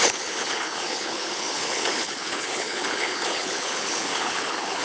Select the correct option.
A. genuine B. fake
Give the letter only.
B